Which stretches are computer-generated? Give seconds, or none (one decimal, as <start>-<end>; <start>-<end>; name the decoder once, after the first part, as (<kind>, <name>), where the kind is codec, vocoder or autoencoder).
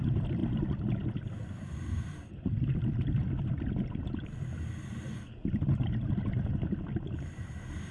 none